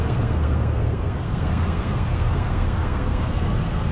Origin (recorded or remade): remade